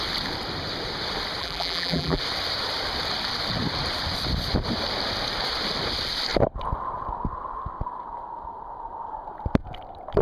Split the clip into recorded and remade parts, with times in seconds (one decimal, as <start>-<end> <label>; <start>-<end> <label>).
0.0-1.4 recorded; 1.4-2.2 remade; 2.2-10.2 recorded